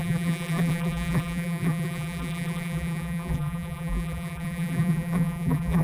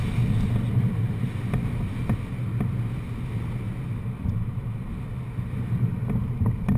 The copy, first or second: first